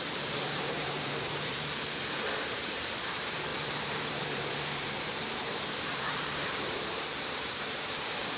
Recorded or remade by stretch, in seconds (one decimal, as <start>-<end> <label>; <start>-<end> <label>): 0.0-8.4 remade